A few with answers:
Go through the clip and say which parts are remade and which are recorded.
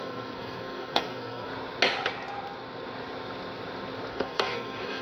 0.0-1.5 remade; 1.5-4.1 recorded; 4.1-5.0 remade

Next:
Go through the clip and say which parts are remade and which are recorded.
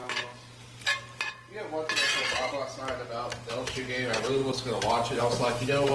0.0-3.5 recorded; 3.5-4.4 remade; 4.4-5.2 recorded; 5.2-5.9 remade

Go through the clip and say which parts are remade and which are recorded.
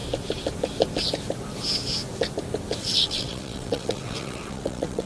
0.0-2.8 recorded; 2.8-5.1 remade